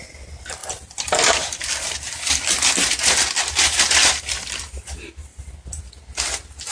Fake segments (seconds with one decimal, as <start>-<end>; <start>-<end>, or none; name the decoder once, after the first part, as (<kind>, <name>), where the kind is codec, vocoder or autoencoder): none